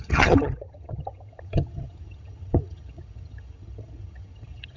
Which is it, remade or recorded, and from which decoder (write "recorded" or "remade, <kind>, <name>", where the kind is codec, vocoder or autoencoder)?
remade, vocoder, HiFi-GAN